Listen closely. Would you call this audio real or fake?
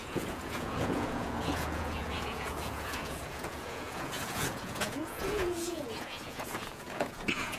fake